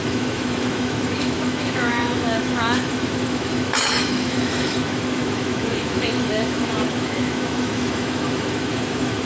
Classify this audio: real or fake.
fake